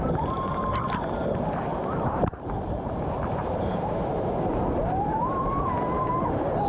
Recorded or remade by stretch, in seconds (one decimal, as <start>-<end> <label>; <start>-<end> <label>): 0.0-1.7 recorded; 1.7-5.7 remade; 5.7-6.7 recorded